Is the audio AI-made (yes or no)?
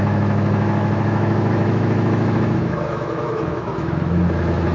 yes